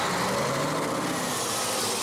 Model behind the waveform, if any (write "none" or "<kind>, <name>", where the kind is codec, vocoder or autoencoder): none